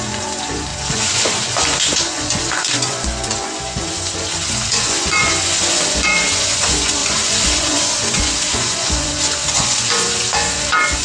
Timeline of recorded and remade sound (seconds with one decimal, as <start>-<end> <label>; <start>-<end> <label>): 0.0-11.0 remade

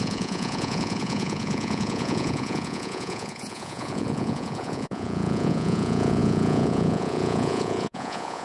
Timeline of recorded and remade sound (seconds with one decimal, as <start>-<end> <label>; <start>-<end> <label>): 0.0-8.4 remade